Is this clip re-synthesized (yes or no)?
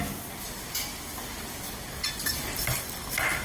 no